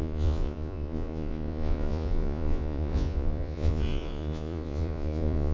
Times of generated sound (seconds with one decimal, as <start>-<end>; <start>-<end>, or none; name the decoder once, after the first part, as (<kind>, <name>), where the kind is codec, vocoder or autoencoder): 0.0-5.5 (vocoder, Vocos)